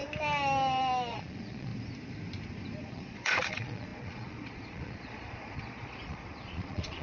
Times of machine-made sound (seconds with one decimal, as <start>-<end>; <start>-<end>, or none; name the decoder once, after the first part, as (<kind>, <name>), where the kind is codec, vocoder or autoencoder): 1.1-1.7 (vocoder, Vocos); 2.9-7.0